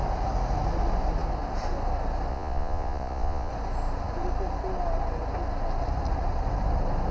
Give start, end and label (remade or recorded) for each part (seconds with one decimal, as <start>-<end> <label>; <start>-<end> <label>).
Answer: 0.0-2.3 recorded; 2.3-3.5 remade; 3.5-7.1 recorded